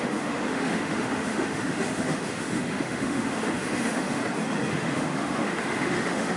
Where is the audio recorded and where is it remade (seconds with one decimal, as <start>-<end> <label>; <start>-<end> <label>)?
0.0-4.2 remade; 4.2-4.7 recorded; 4.7-6.4 remade